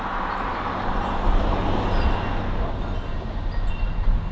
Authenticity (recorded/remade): recorded